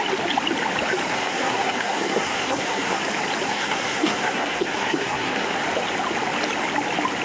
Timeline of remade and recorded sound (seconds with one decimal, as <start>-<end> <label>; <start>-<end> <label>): 0.0-1.1 recorded; 1.1-3.0 remade; 3.0-3.5 recorded; 3.5-5.6 remade; 5.6-7.2 recorded